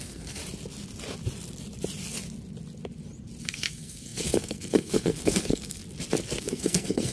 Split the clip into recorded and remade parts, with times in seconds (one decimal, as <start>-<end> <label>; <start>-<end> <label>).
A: 0.0-0.4 remade; 0.4-3.4 recorded; 3.4-5.8 remade; 5.8-6.4 recorded; 6.4-7.1 remade